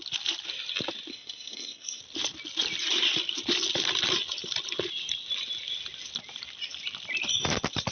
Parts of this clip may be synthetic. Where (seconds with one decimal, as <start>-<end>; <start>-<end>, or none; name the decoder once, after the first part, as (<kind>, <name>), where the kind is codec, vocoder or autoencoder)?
1.1-2.0 (codec, SNAC)